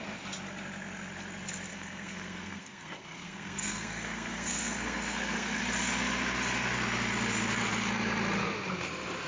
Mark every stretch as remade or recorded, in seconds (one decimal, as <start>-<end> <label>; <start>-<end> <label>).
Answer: 0.0-1.7 recorded; 1.7-5.6 remade; 5.6-9.3 recorded